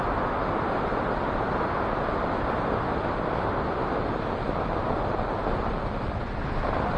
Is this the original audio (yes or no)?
yes